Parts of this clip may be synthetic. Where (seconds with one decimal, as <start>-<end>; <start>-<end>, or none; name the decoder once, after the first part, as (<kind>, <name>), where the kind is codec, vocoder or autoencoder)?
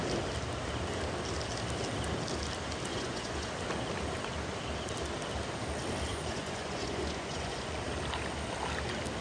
2.9-3.5 (vocoder, Vocos); 6.1-7.8